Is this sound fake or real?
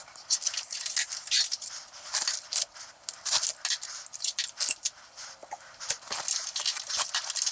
real